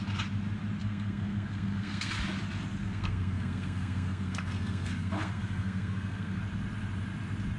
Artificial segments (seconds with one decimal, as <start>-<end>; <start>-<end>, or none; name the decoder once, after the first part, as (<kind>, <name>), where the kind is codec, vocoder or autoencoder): 0.8-2.1 (codec, SNAC); 2.8-6.4